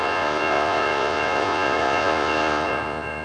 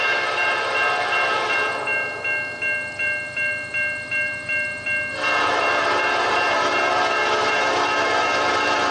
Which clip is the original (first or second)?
second